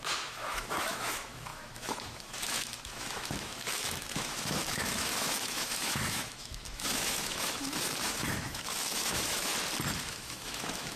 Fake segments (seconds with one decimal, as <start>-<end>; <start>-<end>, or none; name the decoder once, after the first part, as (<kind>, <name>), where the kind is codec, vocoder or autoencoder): 0.0-9.5 (autoencoder, DAC-VAE); 10.0-11.0